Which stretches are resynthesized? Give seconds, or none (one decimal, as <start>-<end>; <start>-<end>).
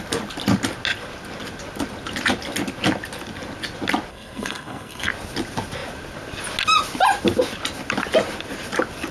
4.1-5.1